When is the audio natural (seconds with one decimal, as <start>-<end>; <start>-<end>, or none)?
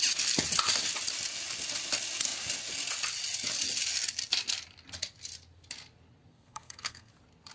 0.0-6.3; 7.1-7.5